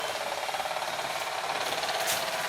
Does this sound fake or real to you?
real